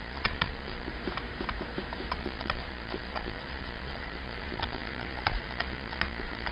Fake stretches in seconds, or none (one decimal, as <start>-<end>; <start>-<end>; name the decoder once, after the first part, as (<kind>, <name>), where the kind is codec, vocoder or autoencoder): 0.0-0.9 (vocoder, Vocos); 2.1-6.5